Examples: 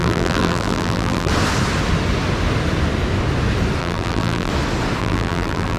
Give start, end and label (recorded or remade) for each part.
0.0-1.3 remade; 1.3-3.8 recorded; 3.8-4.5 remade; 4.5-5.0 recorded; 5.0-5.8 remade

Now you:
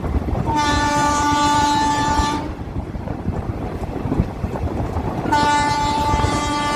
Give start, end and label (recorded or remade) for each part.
0.0-6.8 remade

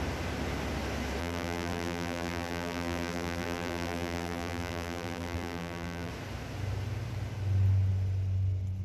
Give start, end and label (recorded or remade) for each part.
0.0-1.2 recorded; 1.2-6.1 remade; 6.1-8.8 recorded

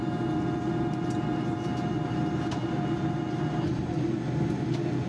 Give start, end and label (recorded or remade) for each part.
0.0-5.1 recorded

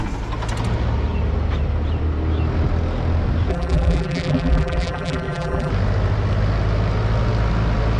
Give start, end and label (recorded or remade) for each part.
0.0-3.5 recorded; 3.5-5.7 remade; 5.7-8.0 recorded

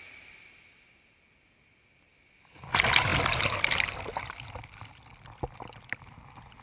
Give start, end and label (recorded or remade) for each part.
0.0-6.6 recorded

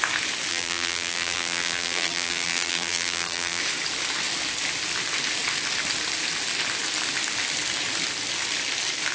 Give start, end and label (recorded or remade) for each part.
0.0-0.5 recorded; 0.5-3.6 remade; 3.6-9.1 recorded

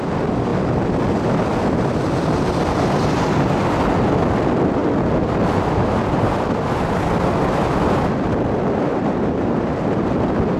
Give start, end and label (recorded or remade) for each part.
0.0-8.9 recorded; 8.9-9.7 remade; 9.7-10.6 recorded